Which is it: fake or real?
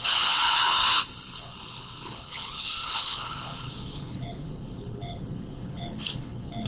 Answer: fake